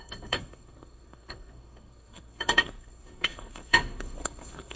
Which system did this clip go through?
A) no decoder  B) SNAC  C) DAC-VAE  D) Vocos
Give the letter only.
B